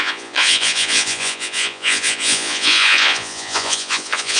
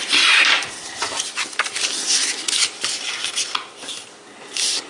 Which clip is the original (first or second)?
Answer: second